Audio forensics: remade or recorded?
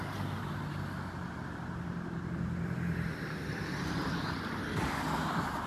recorded